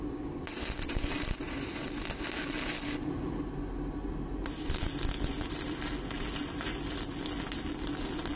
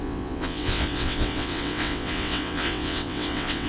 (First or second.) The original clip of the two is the first